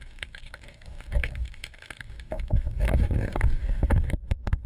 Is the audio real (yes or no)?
no